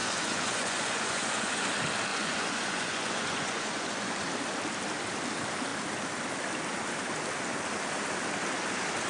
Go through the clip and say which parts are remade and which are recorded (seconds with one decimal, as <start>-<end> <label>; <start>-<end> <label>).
0.0-1.7 remade; 1.7-2.1 recorded; 2.1-4.2 remade; 4.2-9.1 recorded